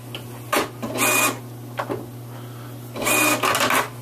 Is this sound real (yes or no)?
yes